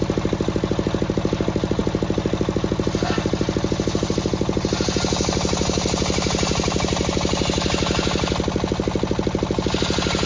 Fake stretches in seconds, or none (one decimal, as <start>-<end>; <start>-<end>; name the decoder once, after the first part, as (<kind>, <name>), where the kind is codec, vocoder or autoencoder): none